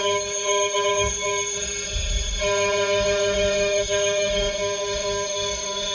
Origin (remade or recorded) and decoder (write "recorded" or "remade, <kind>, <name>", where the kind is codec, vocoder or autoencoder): remade, autoencoder, DAC-VAE